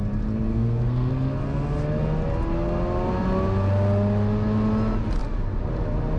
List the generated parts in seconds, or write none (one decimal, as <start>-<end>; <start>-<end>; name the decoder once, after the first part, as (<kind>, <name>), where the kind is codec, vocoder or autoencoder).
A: 0.5-1.1 (codec, SNAC)